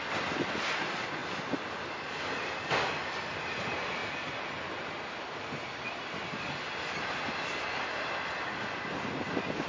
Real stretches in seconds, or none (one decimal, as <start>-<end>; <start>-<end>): 0.0-9.7